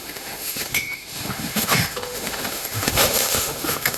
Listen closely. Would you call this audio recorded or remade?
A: remade